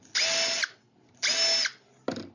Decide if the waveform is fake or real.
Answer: real